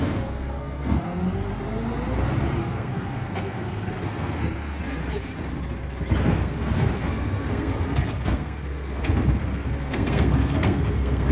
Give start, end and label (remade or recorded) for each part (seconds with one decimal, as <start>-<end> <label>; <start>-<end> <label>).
0.0-1.2 remade; 1.2-2.6 recorded; 2.6-5.0 remade; 5.0-6.2 recorded; 6.2-11.3 remade